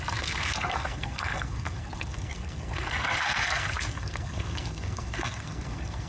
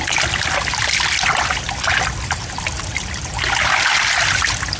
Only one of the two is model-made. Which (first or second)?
first